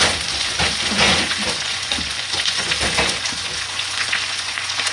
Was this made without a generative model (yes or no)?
no